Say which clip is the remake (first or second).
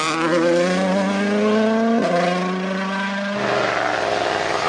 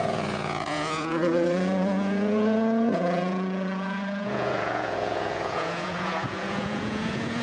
second